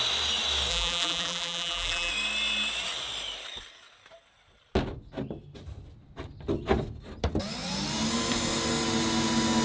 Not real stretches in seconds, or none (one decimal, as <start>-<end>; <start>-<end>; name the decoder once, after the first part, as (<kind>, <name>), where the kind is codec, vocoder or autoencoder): 0.7-2.1 (vocoder, BigVGAN v2)